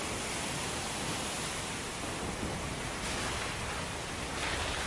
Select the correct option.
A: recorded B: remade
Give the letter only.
A